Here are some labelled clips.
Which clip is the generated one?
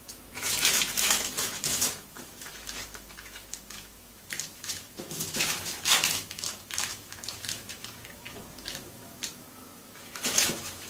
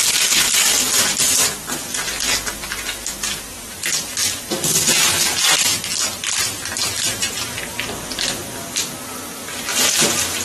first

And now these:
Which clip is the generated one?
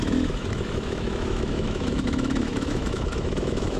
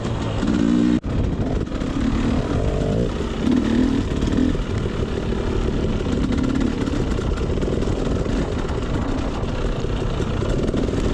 first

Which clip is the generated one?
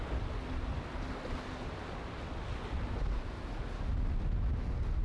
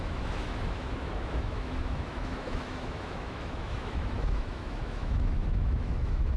second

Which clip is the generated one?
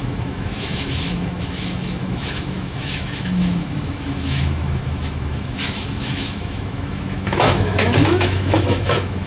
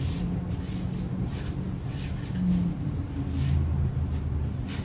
first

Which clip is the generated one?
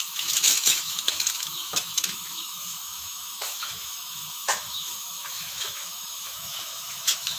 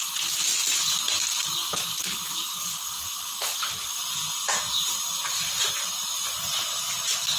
first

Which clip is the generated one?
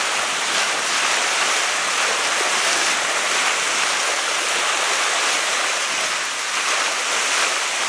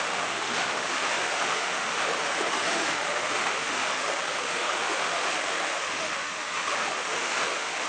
second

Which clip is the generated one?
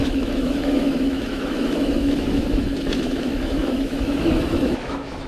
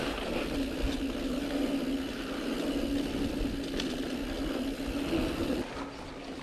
first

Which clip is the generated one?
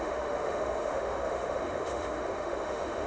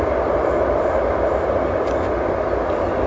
first